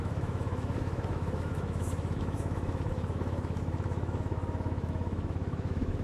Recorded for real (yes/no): no